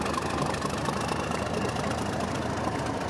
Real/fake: fake